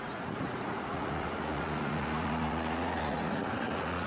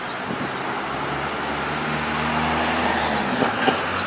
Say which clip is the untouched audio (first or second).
second